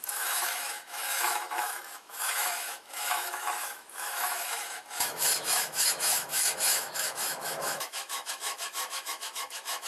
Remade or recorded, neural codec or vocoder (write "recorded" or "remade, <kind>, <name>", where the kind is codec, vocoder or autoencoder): remade, autoencoder, DAC-VAE